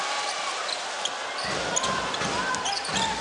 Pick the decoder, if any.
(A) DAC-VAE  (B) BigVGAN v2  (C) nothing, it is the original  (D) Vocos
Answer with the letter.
C